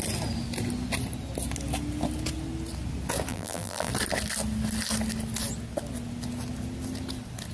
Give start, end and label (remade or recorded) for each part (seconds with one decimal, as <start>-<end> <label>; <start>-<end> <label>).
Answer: 0.0-3.3 recorded; 3.3-3.9 remade; 3.9-7.5 recorded